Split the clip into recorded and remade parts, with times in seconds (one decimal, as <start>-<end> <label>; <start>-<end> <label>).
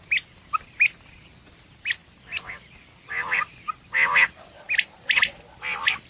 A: 0.0-6.1 recorded